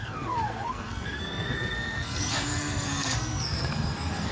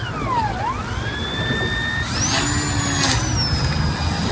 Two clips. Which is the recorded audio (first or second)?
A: second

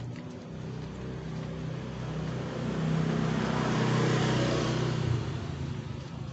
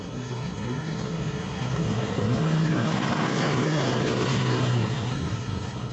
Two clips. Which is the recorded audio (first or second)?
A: first